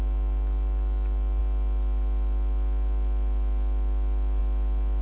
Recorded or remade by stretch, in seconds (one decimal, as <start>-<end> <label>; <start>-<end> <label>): 0.0-5.0 recorded